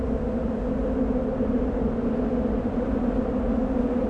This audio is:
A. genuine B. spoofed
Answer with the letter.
A